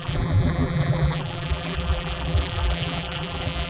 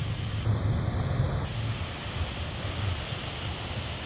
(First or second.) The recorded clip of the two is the second